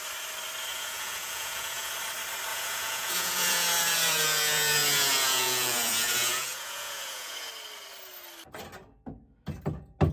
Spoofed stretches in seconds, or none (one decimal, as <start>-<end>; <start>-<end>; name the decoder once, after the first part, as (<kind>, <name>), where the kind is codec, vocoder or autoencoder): 0.7-1.9 (vocoder, Vocos); 2.5-7.5

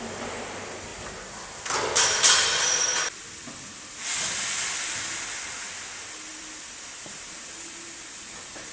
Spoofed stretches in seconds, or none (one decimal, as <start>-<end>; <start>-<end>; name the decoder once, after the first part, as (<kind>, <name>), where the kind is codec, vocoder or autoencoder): 6.3-7.2 (vocoder, BigVGAN v2)

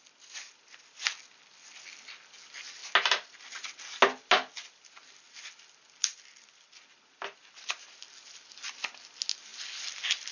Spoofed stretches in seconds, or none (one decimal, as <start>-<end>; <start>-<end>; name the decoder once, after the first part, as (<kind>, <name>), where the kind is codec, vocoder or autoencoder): none

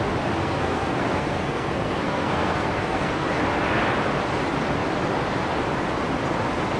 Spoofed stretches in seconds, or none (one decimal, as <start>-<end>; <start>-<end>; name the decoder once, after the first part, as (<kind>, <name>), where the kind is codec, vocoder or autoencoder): 0.4-3.3 (codec, SNAC)